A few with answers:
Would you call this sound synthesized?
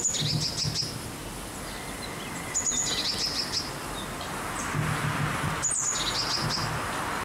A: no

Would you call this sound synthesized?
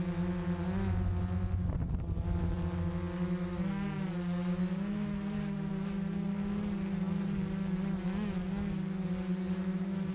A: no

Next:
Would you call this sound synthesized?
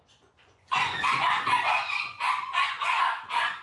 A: yes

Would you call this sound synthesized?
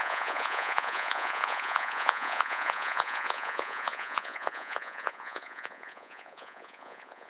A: yes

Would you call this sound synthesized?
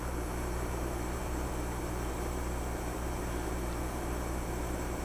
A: yes